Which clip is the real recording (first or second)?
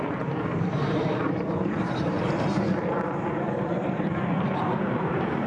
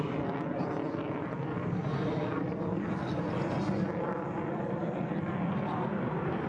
second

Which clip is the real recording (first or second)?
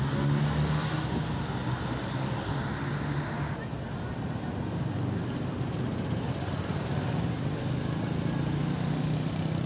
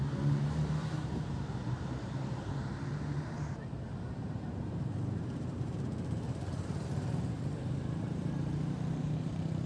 first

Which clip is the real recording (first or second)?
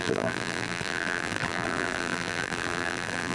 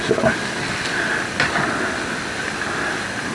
second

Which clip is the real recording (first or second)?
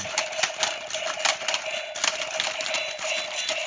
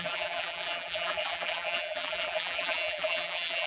first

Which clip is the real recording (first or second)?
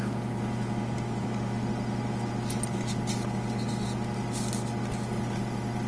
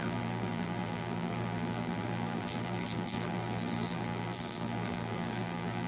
first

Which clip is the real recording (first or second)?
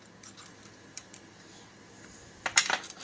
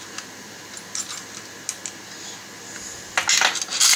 second